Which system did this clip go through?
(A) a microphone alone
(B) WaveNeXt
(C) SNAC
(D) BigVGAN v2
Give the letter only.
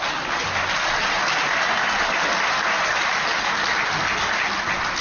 A